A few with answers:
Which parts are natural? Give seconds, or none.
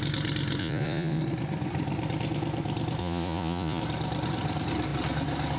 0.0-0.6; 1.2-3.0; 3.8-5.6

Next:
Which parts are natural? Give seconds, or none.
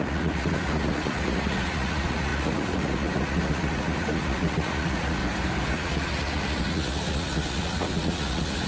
5.2-5.7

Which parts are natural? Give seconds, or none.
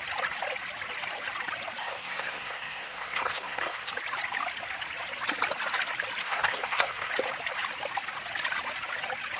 0.0-1.8; 3.9-6.2; 7.1-9.4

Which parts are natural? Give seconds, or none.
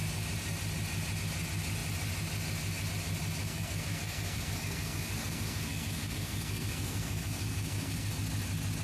0.0-3.4; 8.1-8.8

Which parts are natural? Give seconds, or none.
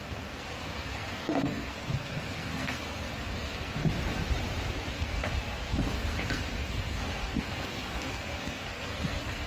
3.8-4.9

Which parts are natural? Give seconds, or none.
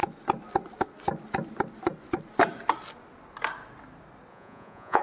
0.0-4.3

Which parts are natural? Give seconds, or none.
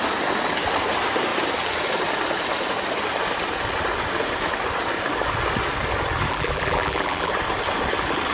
0.0-6.3; 7.3-8.3